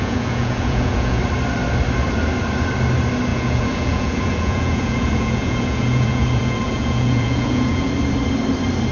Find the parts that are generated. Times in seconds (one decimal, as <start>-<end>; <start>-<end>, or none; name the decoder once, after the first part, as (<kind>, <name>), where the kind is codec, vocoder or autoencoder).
0.0-1.2 (vocoder, Vocos); 3.3-7.9